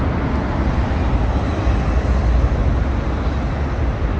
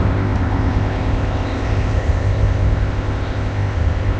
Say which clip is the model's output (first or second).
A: second